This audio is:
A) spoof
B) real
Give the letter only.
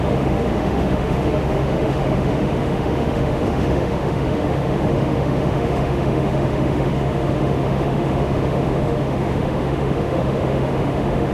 A